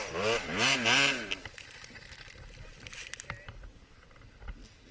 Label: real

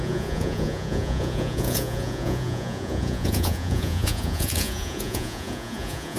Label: fake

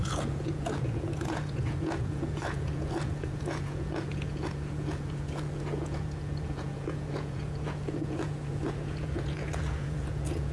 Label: fake